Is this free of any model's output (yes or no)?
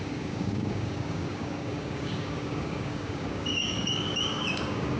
no